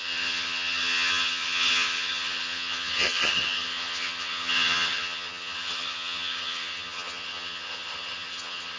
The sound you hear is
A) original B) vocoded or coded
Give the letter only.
B